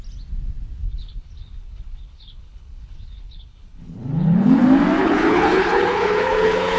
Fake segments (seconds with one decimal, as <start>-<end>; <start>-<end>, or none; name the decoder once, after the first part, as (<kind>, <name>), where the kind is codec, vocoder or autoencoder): 0.8-4.6 (codec, HILCodec); 5.0-6.8